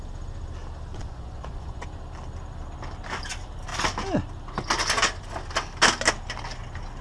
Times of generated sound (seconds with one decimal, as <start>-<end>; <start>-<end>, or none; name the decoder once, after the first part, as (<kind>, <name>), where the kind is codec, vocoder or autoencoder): 0.9-1.8 (vocoder, Vocos)